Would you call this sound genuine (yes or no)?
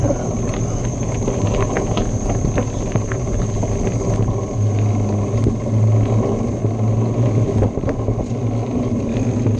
yes